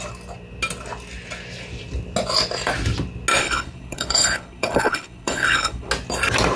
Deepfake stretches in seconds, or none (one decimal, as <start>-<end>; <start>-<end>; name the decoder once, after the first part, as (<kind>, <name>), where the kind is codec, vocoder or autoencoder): 3.4-5.9 (codec, HILCodec)